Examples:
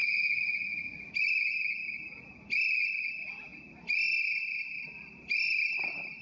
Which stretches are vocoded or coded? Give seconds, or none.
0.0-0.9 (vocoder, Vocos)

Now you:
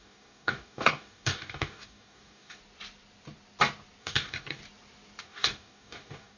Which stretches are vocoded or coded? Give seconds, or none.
0.0-2.6 (codec, DAC); 4.0-4.6; 5.2-6.4

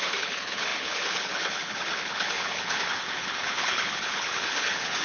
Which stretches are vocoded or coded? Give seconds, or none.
0.0-5.0 (codec, HILCodec)

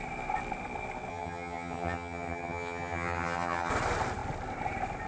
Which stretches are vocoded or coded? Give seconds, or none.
1.1-3.7 (vocoder, HiFi-GAN)

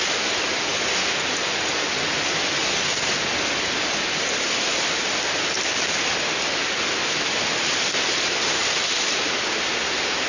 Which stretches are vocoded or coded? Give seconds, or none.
none

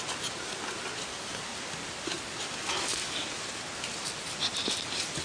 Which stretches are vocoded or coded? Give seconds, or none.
none

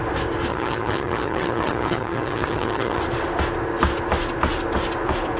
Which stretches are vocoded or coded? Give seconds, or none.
0.5-3.0 (vocoder, HiFi-GAN)